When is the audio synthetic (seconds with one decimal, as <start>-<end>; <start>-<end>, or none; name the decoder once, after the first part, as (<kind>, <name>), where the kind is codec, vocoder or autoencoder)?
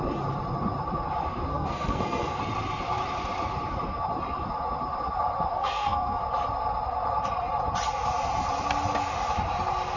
1.5-2.4 (codec, SNAC); 5.5-6.2